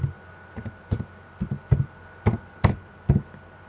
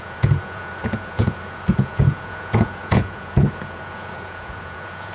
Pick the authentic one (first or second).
first